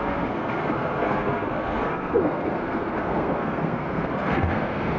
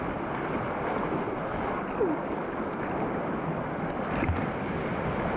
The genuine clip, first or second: second